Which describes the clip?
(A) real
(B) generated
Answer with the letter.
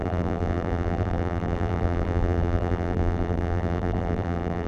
B